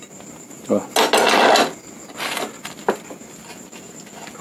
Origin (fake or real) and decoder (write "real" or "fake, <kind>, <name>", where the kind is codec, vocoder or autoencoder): real